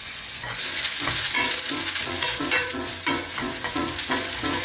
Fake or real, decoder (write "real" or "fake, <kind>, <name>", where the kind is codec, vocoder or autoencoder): fake, vocoder, Vocos